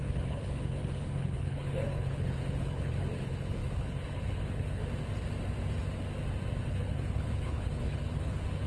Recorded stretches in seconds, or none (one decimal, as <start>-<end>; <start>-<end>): 4.8-6.7